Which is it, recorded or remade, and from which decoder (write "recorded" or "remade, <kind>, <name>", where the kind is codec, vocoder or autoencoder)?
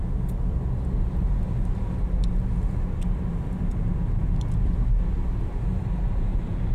recorded